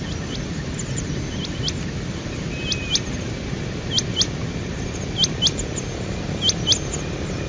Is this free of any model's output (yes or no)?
yes